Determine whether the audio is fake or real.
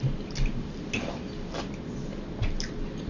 real